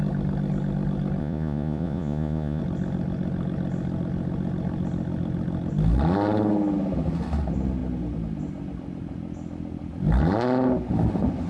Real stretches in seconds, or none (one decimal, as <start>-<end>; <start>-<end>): 0.0-1.2; 2.6-11.5